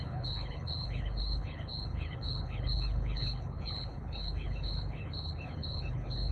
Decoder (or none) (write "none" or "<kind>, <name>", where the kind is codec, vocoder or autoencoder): codec, HILCodec